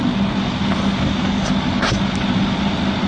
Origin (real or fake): real